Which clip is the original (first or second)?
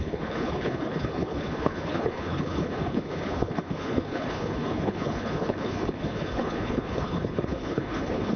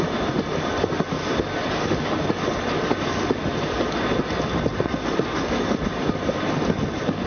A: second